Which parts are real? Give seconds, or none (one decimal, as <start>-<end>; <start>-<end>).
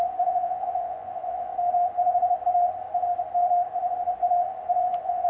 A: 1.5-4.7